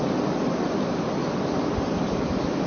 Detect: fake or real real